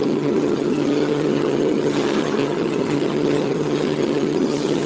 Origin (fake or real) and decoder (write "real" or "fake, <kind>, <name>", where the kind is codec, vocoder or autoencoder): fake, vocoder, HiFi-GAN